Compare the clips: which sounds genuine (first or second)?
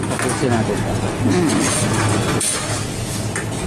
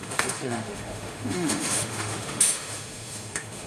first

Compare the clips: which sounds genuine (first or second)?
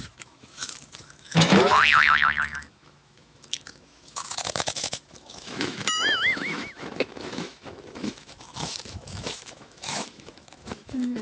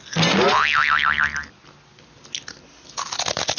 second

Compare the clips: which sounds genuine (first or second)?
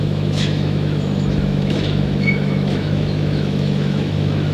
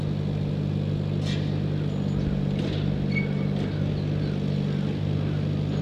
second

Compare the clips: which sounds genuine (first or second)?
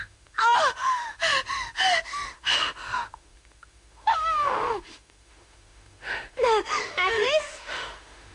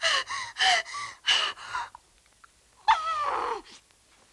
second